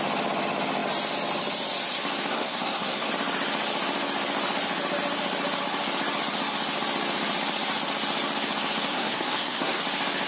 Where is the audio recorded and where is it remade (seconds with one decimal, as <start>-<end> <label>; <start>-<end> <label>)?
0.0-2.3 recorded; 2.3-3.1 remade; 3.1-8.9 recorded; 8.9-9.8 remade; 9.8-10.3 recorded